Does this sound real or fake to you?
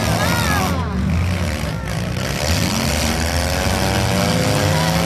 real